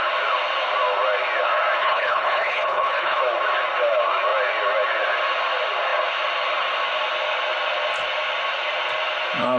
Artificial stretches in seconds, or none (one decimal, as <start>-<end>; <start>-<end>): 1.8-3.2